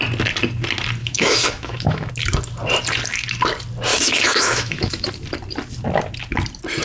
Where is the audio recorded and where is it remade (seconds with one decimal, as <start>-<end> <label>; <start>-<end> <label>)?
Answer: 0.0-1.0 recorded; 1.0-2.1 remade; 2.1-3.9 recorded; 3.9-5.1 remade; 5.1-6.8 recorded